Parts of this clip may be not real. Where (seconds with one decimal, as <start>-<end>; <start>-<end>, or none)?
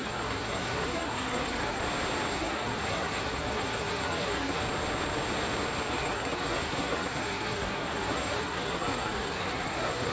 0.0-1.8; 2.3-4.6; 5.9-10.1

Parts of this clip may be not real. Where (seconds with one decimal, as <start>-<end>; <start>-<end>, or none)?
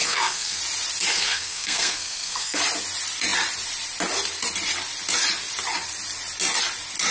0.0-0.6; 1.1-2.6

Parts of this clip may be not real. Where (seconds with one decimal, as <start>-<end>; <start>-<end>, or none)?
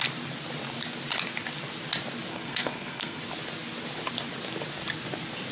2.3-3.2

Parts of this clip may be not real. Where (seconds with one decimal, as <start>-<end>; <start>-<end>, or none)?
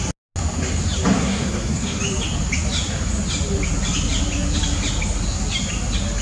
1.2-2.0